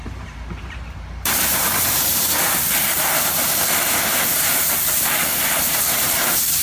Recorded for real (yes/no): no